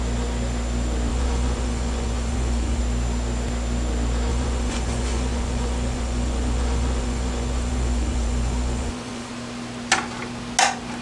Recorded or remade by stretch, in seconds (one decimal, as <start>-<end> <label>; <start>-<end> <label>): 0.0-1.1 recorded; 1.1-2.8 remade; 2.8-4.3 recorded; 4.3-9.3 remade; 9.3-11.0 recorded